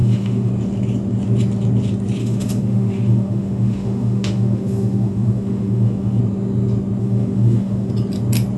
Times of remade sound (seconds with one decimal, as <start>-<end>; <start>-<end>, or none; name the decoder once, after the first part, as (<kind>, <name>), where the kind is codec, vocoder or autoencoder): 0.0-0.5 (autoencoder, DAC-VAE); 2.2-6.2; 7.0-7.9